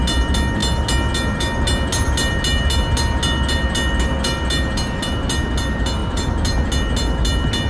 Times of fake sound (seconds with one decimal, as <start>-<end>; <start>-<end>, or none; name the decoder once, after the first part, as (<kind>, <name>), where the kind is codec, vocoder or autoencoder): none